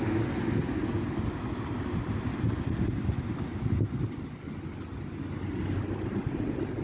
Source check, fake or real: real